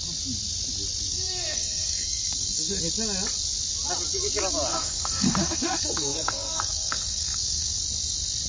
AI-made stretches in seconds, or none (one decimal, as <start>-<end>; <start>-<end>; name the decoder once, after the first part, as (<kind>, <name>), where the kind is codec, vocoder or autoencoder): 1.1-2.8 (codec, SNAC); 4.7-7.8